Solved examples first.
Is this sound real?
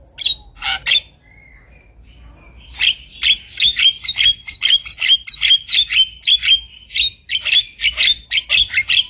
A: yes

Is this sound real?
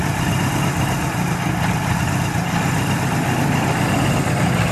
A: yes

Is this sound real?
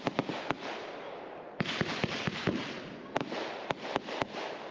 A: yes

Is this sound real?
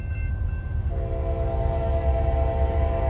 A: yes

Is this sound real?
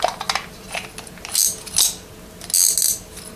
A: yes